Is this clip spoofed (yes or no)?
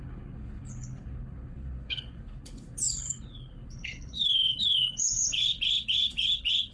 yes